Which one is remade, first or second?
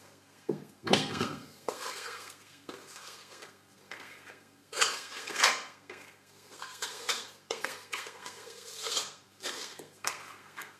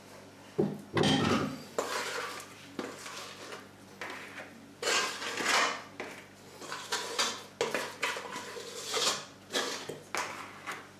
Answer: first